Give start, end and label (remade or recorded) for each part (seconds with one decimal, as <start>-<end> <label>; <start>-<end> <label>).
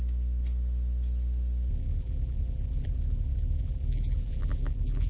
0.0-1.7 recorded; 1.7-5.1 remade